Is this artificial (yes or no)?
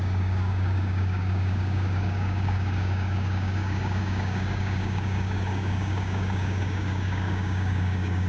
yes